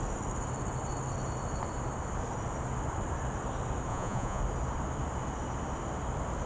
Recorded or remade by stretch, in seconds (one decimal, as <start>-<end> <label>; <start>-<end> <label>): 0.0-3.9 recorded; 3.9-4.4 remade; 4.4-6.5 recorded